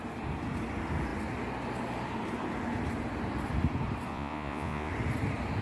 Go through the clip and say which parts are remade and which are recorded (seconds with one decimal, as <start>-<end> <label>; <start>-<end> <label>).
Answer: 0.0-4.1 recorded; 4.1-4.9 remade; 4.9-5.6 recorded